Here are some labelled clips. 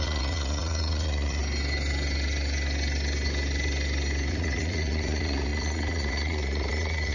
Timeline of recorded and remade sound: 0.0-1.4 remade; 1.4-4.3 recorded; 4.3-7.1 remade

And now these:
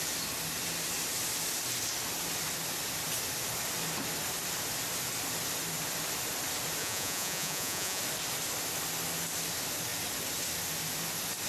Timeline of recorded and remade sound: 0.0-6.8 recorded; 6.8-8.0 remade; 8.0-11.5 recorded

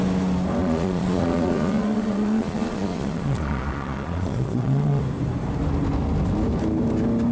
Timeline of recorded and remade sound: 0.0-0.6 recorded; 0.6-5.0 remade; 5.0-7.3 recorded

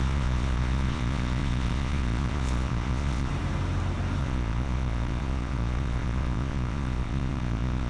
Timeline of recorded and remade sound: 0.0-3.3 remade; 3.3-4.2 recorded; 4.2-7.9 remade

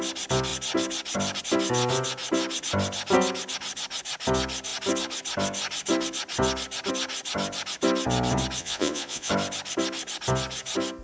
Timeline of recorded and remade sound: 0.0-8.6 recorded; 8.6-9.3 remade; 9.3-11.0 recorded

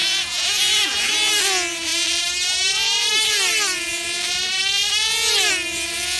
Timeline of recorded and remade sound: 0.0-1.1 remade; 1.1-6.2 recorded

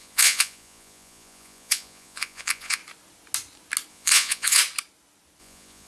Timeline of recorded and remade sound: 0.0-2.8 remade; 2.8-3.9 recorded; 3.9-4.6 remade; 4.6-5.4 recorded; 5.4-5.9 remade

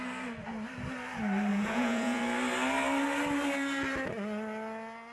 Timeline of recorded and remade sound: 0.0-1.5 recorded; 1.5-2.2 remade; 2.2-5.1 recorded